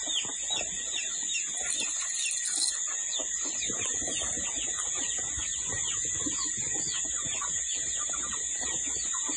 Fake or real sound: real